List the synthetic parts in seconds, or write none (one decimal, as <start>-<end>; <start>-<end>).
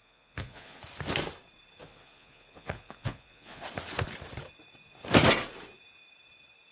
0.0-0.8; 1.8-3.6